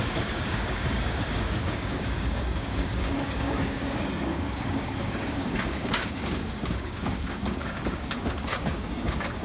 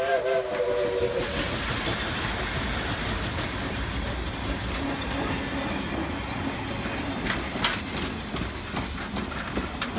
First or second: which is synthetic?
first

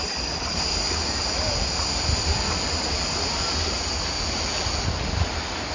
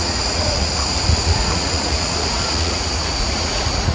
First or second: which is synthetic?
second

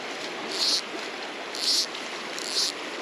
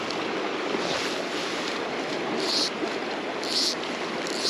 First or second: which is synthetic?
second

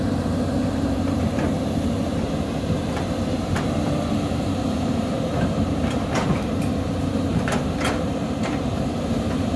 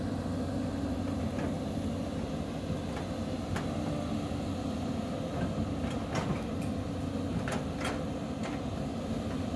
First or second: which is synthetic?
first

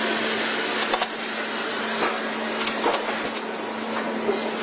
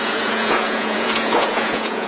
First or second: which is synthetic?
second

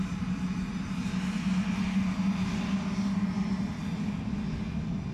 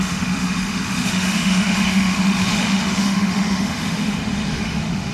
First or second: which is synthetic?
second